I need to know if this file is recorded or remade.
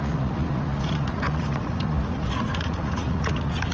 remade